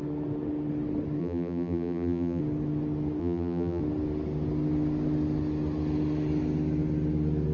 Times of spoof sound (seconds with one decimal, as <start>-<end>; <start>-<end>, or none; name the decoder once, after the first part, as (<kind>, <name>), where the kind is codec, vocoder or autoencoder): 1.2-2.4 (vocoder, BigVGAN v2); 3.2-3.8